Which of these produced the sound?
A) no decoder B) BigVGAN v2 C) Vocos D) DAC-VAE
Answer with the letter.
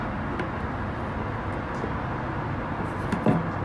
A